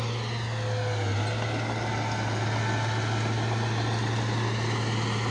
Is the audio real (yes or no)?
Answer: yes